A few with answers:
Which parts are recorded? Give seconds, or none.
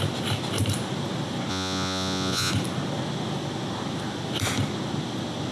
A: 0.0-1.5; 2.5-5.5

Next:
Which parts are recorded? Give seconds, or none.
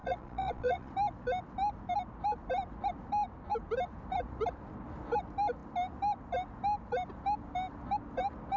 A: 0.9-8.6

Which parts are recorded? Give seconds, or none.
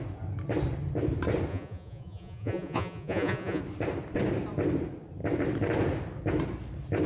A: 0.0-1.5; 3.6-7.1